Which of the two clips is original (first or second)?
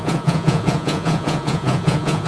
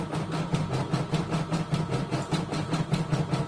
second